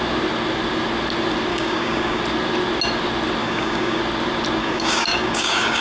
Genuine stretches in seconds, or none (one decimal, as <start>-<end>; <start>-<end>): 0.0-1.5; 2.2-3.4; 4.0-4.6